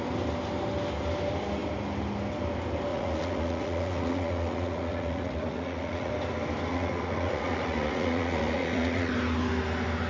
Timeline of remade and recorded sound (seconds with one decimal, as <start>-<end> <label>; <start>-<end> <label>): 0.0-2.9 recorded; 2.9-6.1 remade; 6.1-6.7 recorded; 6.7-9.1 remade; 9.1-10.1 recorded